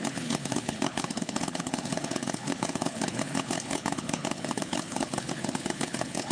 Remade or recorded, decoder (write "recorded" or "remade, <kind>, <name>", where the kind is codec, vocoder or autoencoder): remade, codec, HILCodec